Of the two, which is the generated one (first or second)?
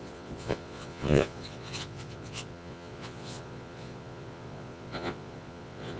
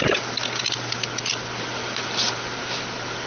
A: first